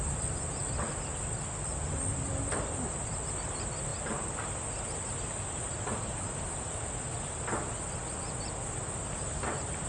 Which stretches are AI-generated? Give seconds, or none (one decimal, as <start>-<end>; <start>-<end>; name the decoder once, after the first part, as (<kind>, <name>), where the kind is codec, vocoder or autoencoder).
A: none